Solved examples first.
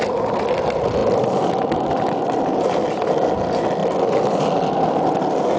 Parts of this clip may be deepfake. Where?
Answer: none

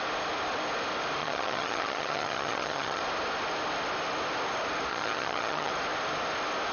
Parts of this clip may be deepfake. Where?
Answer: 1.2-3.0; 4.9-5.7